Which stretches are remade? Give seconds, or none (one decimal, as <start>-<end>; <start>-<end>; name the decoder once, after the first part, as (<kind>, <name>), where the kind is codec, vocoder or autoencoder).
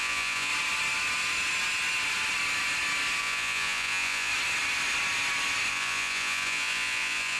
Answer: 0.0-0.5 (vocoder, Vocos); 3.2-4.3; 5.7-7.4